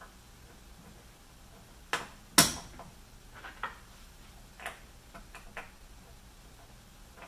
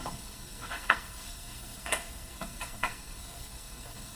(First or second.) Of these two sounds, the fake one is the second